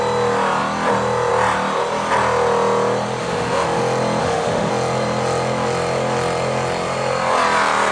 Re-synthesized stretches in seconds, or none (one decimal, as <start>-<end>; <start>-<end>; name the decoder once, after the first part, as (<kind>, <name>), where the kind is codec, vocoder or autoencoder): 3.2-3.8 (autoencoder, DAC-VAE); 4.2-4.7